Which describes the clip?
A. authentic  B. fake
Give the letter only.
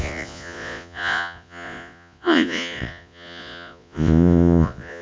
B